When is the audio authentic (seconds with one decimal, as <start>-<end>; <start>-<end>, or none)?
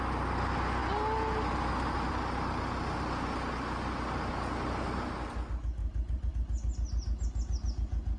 0.0-5.8; 6.3-8.2